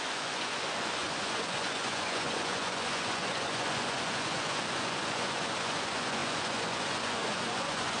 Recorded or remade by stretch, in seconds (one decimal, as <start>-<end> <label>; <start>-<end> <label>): 0.0-8.0 remade